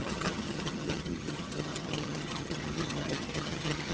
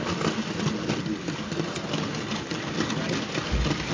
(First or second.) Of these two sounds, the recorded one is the second